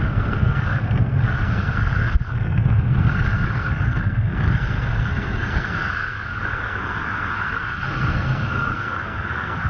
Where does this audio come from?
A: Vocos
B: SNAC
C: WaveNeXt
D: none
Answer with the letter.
B